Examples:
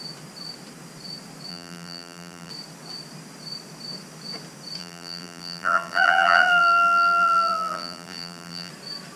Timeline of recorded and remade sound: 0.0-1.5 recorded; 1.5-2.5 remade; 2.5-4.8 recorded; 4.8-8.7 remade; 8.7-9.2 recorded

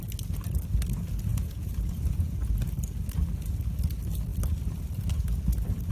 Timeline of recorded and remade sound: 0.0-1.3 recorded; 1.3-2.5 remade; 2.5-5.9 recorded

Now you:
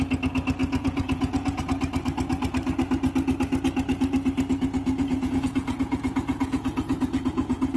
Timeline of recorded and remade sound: 0.0-0.6 recorded; 0.6-1.6 remade; 1.6-4.8 recorded; 4.8-7.8 remade